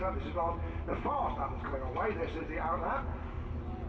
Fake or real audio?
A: real